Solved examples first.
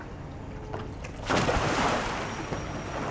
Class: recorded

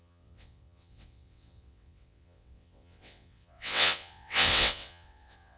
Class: remade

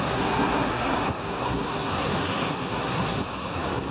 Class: remade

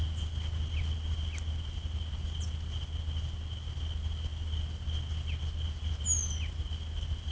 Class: recorded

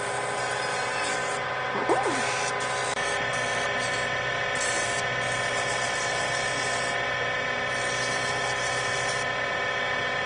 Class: recorded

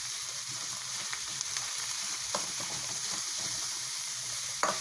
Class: remade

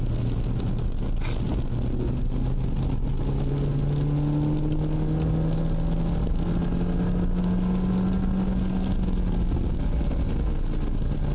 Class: recorded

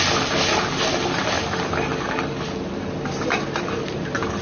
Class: remade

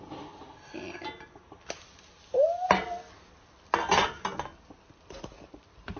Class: recorded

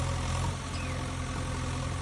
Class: recorded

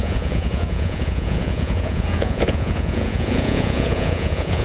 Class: remade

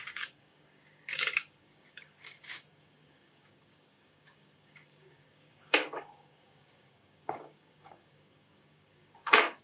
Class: remade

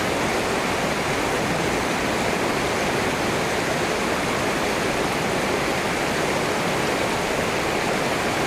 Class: recorded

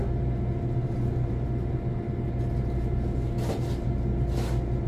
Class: recorded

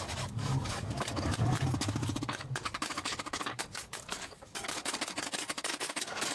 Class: remade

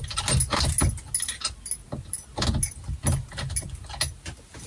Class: recorded